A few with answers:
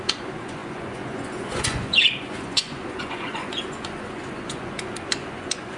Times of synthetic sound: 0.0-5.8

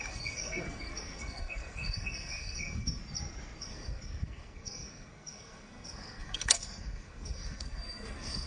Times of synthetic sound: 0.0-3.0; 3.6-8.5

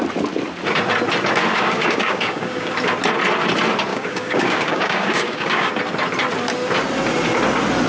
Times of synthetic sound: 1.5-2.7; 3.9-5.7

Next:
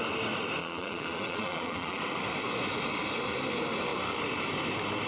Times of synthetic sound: 0.6-2.0